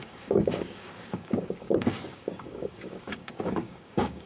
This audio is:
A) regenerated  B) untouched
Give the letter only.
A